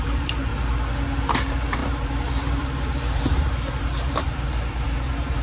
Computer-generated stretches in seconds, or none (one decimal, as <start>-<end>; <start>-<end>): 0.0-0.5; 1.4-5.4